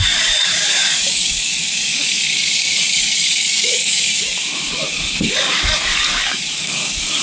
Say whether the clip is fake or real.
fake